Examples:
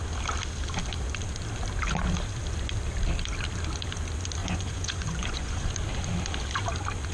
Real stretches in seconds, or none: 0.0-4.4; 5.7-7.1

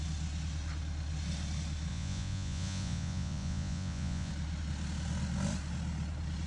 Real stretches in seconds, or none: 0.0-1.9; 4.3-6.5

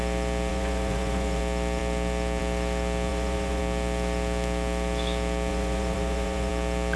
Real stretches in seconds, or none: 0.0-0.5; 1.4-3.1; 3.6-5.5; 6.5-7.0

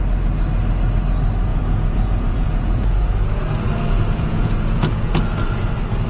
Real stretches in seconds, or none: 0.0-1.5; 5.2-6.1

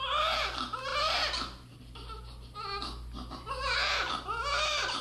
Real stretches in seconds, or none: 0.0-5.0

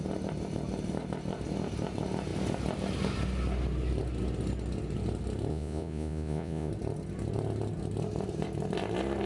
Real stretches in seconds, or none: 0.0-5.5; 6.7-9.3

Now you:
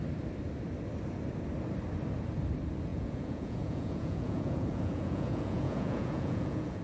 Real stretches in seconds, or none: 0.0-2.9

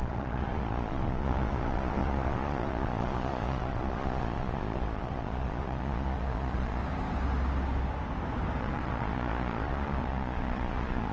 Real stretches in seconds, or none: 6.8-8.6